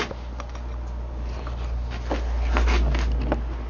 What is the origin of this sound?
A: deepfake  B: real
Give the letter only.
B